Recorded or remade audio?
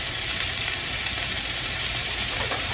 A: remade